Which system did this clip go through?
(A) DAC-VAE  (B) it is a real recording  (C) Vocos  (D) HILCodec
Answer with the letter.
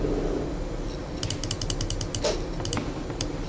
B